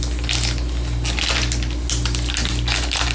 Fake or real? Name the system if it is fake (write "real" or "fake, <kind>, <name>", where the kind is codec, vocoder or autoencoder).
real